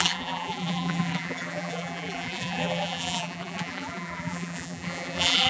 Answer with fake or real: fake